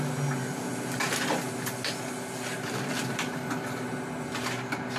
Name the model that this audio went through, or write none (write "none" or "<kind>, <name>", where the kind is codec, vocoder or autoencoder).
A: none